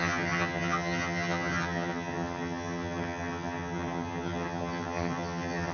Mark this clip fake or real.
fake